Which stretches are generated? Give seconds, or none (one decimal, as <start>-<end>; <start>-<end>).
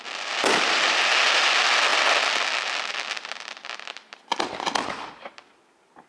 none